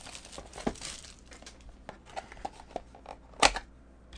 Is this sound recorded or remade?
recorded